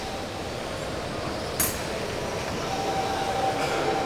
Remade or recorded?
recorded